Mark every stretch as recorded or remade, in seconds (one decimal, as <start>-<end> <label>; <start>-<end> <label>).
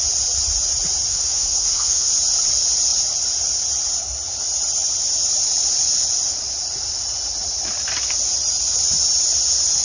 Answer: 0.0-1.1 recorded; 1.1-2.1 remade; 2.1-9.8 recorded